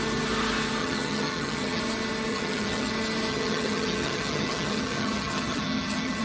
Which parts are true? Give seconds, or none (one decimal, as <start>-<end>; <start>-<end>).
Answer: 0.0-0.8; 1.8-2.3; 2.9-3.3